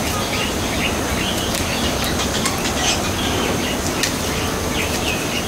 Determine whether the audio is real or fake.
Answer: real